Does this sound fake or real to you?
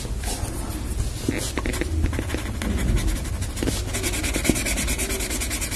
real